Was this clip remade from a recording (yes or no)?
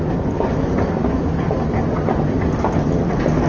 no